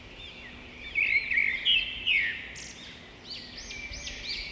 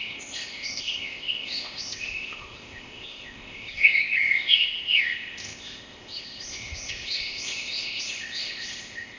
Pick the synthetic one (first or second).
second